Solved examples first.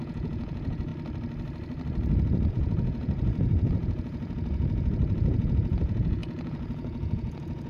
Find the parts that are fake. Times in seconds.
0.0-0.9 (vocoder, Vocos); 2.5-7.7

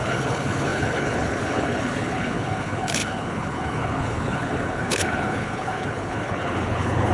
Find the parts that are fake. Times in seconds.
0.0-7.1 (codec, HILCodec)

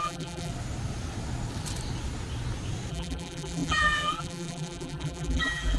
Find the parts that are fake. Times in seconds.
0.0-0.5 (vocoder, BigVGAN v2); 2.9-5.8

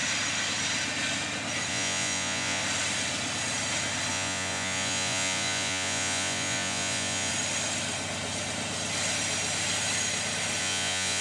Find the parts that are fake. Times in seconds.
1.7-2.6 (vocoder, Vocos); 4.1-7.3; 10.6-11.2

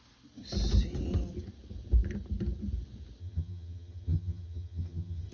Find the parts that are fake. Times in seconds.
3.2-5.3 (vocoder, HiFi-GAN)

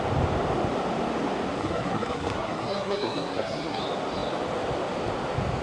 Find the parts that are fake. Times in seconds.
1.6-3.8 (codec, SNAC)

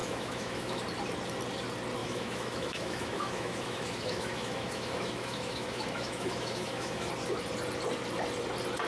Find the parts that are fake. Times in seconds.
0.0-0.8 (autoencoder, DAC-VAE); 2.0-7.1

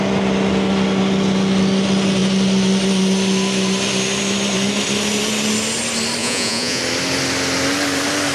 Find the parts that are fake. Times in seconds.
6.2-6.8 (vocoder, Vocos)